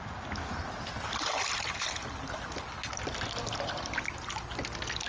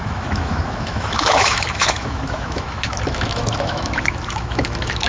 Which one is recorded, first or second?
first